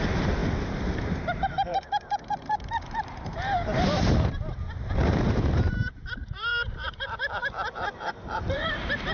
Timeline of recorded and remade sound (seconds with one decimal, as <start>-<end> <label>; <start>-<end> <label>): 0.0-9.1 remade